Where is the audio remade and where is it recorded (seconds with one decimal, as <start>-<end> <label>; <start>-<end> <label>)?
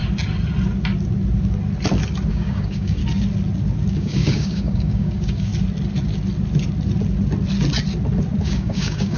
0.0-2.3 recorded; 2.3-3.0 remade; 3.0-3.9 recorded; 3.9-5.5 remade; 5.5-8.4 recorded; 8.4-9.2 remade